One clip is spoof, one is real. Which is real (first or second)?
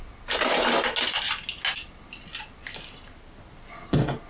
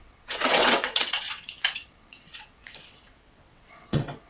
first